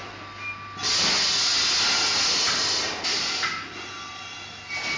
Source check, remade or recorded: recorded